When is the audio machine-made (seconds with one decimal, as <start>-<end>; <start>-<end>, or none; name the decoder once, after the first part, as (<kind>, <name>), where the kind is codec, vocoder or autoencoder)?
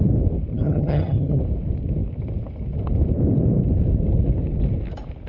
0.5-1.4 (vocoder, HiFi-GAN)